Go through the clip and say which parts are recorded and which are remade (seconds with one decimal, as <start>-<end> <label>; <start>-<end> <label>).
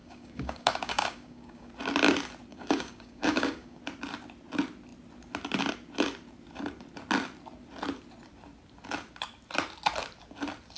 0.0-1.7 remade; 1.7-2.5 recorded; 2.5-3.8 remade; 3.8-10.8 recorded